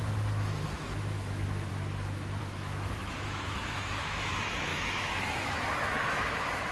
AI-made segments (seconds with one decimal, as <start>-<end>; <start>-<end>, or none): 0.0-1.7; 2.4-6.7